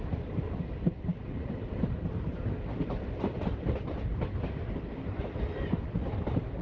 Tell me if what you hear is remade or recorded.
recorded